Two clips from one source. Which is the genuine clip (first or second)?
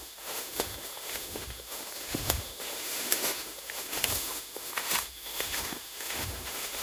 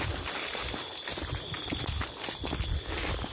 second